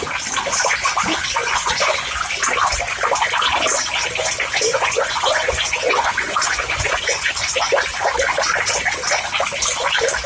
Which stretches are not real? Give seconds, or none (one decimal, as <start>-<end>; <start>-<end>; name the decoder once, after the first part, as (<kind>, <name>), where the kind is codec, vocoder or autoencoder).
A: 1.4-2.2 (vocoder, Vocos); 4.7-7.3